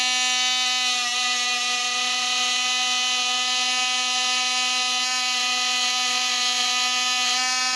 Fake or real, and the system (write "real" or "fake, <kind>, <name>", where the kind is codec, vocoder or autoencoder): real